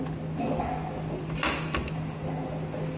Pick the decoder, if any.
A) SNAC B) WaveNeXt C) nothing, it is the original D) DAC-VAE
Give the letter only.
C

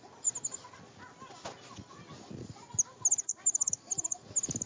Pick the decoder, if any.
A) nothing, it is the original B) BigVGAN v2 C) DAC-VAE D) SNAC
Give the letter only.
A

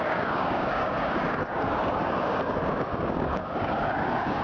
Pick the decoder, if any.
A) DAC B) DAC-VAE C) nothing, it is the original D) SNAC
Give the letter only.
A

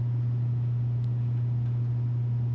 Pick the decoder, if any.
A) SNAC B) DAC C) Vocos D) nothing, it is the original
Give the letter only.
D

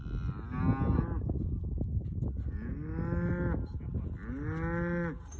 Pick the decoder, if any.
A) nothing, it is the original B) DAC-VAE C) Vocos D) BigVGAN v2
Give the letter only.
A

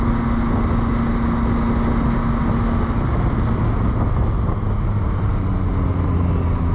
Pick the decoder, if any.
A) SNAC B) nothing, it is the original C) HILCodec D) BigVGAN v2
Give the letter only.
B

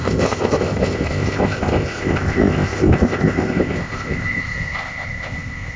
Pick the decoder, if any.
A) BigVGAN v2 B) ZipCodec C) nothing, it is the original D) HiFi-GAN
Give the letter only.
B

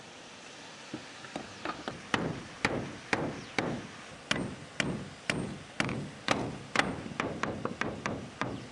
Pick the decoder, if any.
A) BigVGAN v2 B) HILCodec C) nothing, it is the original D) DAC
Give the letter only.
C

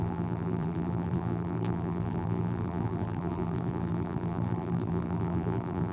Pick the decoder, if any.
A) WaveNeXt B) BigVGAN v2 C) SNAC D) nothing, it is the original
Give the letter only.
B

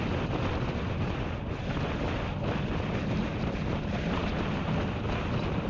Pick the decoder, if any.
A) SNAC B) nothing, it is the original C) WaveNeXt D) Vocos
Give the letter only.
B